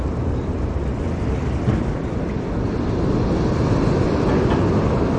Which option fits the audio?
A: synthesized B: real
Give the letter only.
B